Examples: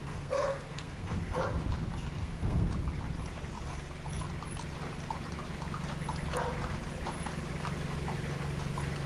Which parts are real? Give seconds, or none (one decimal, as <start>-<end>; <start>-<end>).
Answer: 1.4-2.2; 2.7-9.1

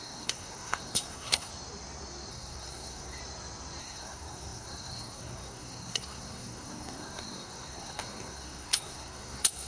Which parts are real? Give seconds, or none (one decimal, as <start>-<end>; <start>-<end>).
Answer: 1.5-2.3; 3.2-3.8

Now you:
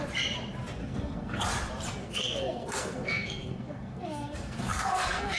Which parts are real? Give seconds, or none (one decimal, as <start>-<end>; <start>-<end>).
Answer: 0.0-0.8; 1.4-2.0